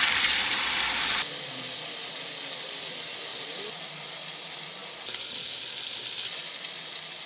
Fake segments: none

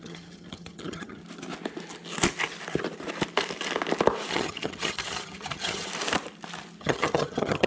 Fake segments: 0.0-1.2 (vocoder, HiFi-GAN); 4.3-5.9; 6.8-7.7

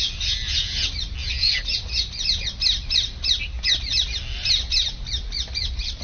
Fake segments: none

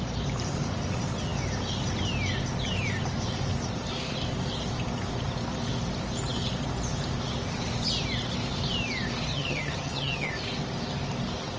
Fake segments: 9.3-10.3 (vocoder, HiFi-GAN)

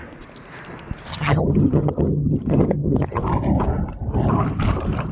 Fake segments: 1.1-3.2 (vocoder, HiFi-GAN)

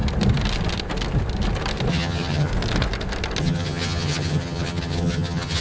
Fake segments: 1.9-2.5 (vocoder, HiFi-GAN); 3.4-5.6

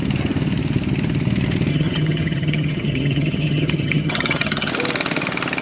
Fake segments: 1.7-4.7 (vocoder, HiFi-GAN)